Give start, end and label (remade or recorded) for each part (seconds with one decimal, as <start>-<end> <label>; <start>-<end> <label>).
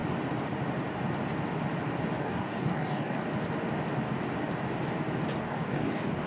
0.0-2.2 recorded; 2.2-3.2 remade; 3.2-5.4 recorded; 5.4-6.3 remade